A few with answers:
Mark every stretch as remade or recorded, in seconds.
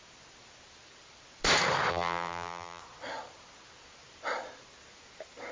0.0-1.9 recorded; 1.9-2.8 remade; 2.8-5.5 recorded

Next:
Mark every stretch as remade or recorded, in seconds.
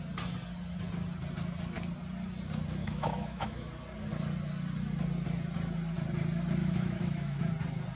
0.0-2.8 recorded; 2.8-3.7 remade; 3.7-6.6 recorded; 6.6-7.5 remade; 7.5-8.0 recorded